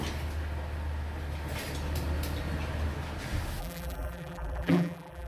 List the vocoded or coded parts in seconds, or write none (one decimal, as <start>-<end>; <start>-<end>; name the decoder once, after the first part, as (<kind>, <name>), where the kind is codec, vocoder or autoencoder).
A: 3.6-5.3 (vocoder, BigVGAN v2)